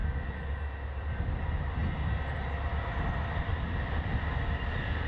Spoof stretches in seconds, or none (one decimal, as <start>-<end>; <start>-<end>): 1.0-1.8